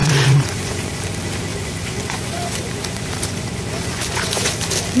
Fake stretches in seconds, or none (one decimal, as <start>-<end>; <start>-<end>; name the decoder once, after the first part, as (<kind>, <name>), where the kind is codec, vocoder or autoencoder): 0.0-1.0 (vocoder, Vocos); 1.5-4.5